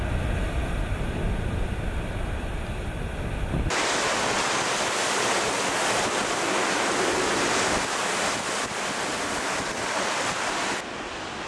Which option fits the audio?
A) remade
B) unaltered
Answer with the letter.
B